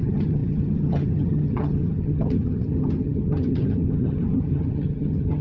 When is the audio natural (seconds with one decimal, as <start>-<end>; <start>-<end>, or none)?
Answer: none